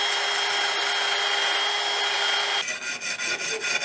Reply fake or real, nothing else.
real